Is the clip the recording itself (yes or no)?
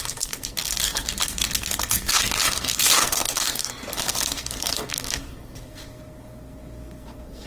no